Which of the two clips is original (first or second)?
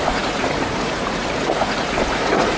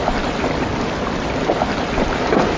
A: second